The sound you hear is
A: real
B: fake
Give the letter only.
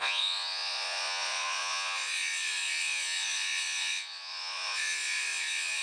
B